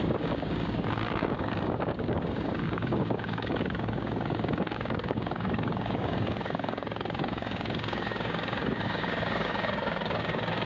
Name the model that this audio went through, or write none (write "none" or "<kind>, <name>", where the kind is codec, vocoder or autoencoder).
codec, DAC